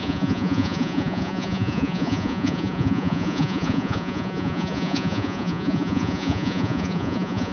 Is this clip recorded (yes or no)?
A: no